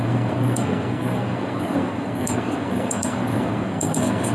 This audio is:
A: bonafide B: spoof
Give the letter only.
B